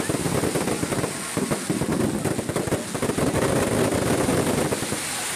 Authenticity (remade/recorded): recorded